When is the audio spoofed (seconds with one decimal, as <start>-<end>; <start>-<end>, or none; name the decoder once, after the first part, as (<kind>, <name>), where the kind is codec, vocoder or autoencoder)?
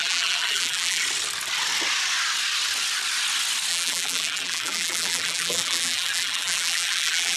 0.0-1.0 (vocoder, BigVGAN v2); 3.7-7.4